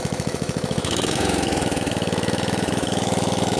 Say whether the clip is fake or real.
fake